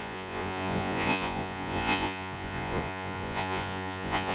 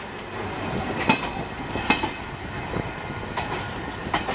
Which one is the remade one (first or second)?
first